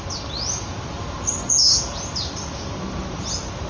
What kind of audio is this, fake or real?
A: real